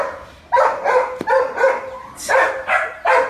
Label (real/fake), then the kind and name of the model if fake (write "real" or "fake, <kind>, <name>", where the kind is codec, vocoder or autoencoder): real